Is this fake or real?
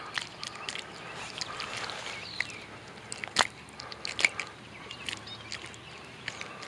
real